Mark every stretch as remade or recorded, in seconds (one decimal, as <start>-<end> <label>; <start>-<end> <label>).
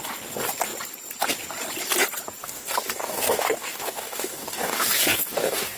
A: 0.0-2.4 recorded; 2.4-5.8 remade